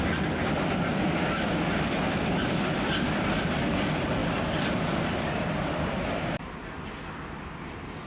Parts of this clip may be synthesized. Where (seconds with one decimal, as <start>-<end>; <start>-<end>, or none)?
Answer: 1.0-1.6